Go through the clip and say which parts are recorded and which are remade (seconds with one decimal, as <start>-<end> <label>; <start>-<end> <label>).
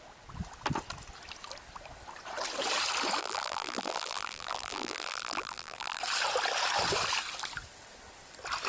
0.0-3.2 recorded; 3.2-6.0 remade; 6.0-8.7 recorded